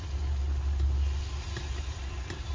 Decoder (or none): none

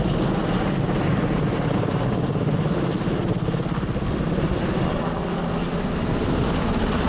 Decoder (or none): none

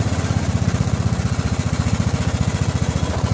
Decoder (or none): vocoder, Vocos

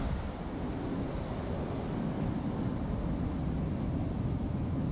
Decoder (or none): none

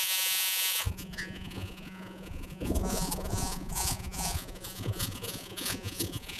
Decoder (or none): vocoder, Vocos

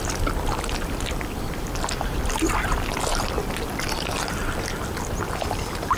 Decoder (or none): none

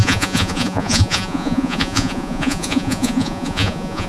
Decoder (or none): vocoder, Vocos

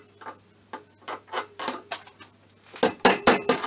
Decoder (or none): none